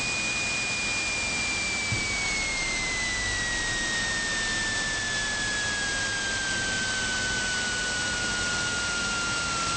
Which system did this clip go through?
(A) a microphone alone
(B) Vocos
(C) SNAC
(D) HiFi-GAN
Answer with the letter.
A